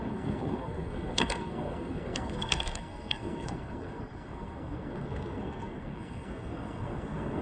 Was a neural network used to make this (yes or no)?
yes